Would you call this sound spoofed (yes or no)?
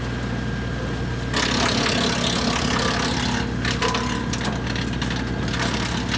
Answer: no